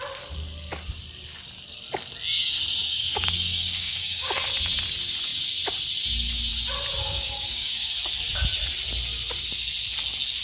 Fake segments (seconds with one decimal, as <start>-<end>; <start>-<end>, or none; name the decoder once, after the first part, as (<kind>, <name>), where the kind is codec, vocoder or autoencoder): 2.8-4.3 (codec, DAC); 7.0-7.9